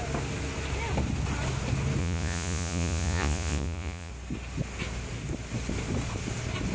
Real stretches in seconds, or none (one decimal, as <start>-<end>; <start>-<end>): 0.0-2.0; 4.1-6.7

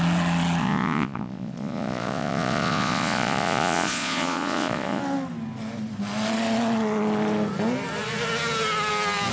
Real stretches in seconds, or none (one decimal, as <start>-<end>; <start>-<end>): 0.0-0.6; 5.0-9.3

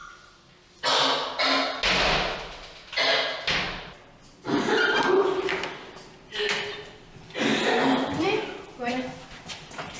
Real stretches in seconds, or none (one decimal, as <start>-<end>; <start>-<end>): 0.0-5.1; 7.5-8.2

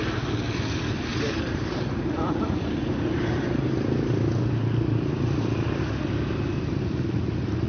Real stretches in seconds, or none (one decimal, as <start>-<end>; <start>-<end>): 0.0-1.1; 5.7-7.7